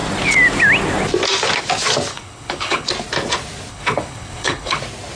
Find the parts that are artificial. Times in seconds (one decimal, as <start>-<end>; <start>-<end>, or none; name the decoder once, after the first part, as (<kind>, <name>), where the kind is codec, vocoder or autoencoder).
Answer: 2.1-2.9 (codec, HILCodec); 3.7-4.8